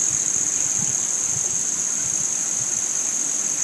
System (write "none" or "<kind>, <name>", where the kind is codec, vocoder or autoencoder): none